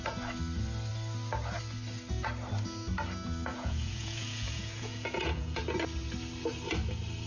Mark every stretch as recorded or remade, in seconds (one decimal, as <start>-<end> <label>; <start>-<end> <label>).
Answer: 0.0-3.5 recorded; 3.5-5.6 remade; 5.6-7.3 recorded